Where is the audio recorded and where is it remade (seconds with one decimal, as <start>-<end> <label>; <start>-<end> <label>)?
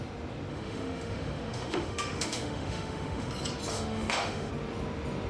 0.0-0.5 recorded; 0.5-3.3 remade; 3.3-3.7 recorded; 3.7-4.5 remade; 4.5-5.3 recorded